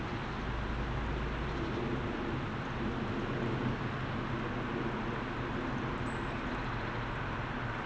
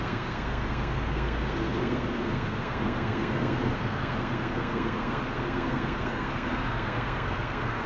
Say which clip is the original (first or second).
first